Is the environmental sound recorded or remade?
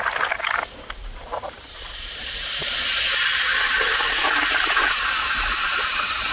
remade